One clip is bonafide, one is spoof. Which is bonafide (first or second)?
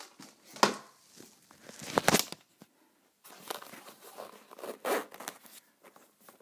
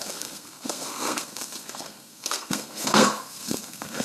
first